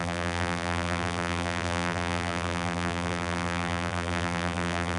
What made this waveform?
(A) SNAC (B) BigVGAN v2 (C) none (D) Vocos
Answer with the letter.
B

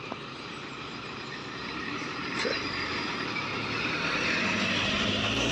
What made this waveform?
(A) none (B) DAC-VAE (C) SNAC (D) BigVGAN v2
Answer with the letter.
D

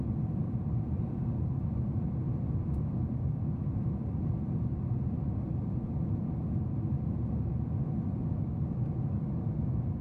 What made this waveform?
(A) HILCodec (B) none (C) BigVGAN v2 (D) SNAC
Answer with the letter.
B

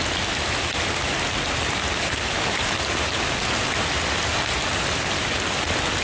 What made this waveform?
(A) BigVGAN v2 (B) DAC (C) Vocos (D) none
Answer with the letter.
D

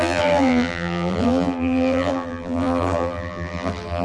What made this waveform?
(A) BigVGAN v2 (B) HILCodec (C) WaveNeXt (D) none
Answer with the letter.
A